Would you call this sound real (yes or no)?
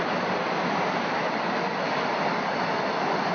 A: yes